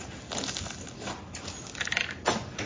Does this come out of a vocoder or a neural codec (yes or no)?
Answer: no